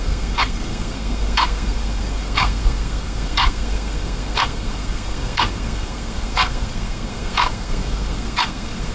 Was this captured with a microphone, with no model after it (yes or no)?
no